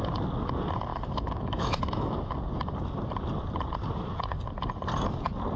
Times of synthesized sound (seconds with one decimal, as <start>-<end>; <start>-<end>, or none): 0.9-2.3